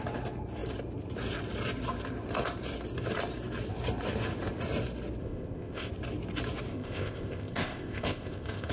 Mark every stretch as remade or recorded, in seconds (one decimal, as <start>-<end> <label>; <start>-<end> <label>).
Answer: 0.0-5.2 recorded; 5.2-5.9 remade; 5.9-6.7 recorded; 6.7-8.7 remade